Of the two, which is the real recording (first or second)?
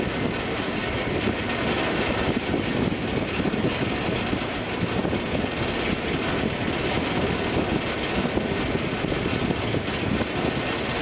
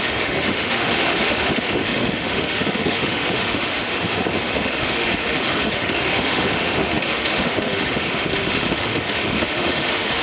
first